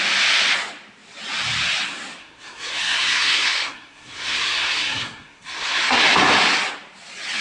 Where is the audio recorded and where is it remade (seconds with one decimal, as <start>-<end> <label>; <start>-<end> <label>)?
0.0-2.2 recorded; 2.2-6.0 remade; 6.0-7.4 recorded